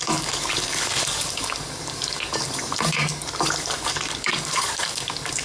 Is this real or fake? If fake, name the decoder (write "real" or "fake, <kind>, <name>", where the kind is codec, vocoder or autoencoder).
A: fake, codec, DAC